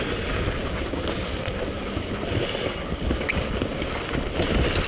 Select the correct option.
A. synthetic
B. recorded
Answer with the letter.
B